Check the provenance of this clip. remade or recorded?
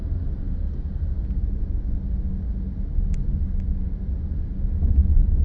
recorded